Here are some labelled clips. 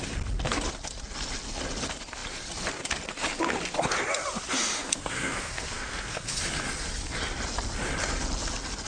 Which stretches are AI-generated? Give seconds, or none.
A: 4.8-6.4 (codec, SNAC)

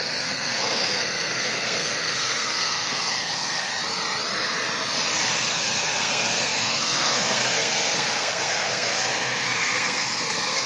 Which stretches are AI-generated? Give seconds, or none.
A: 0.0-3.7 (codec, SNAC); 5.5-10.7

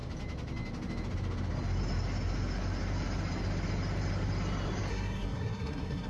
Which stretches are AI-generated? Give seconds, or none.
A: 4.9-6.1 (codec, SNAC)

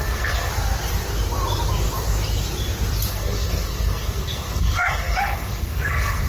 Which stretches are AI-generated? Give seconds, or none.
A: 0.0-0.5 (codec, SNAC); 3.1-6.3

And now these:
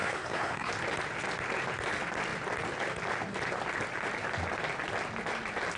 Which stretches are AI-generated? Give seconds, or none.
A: 0.0-0.7 (codec, SNAC)